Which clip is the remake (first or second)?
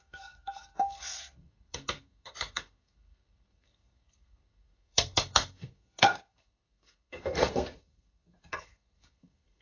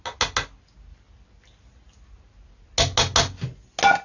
first